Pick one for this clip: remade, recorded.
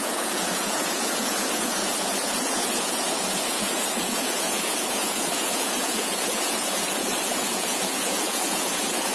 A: remade